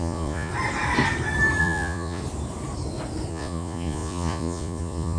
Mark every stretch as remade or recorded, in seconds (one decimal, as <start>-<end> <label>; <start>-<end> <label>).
0.0-0.5 remade; 0.5-1.6 recorded; 1.6-2.2 remade; 2.2-3.3 recorded; 3.3-5.2 remade